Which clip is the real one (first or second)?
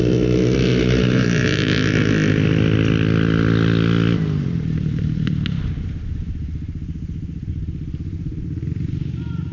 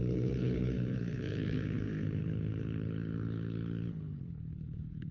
first